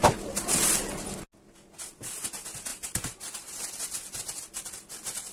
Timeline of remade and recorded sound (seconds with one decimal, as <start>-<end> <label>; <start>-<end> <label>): 0.0-2.7 recorded; 2.7-3.6 remade; 3.6-5.3 recorded